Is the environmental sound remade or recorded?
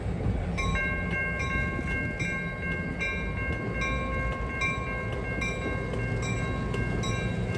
recorded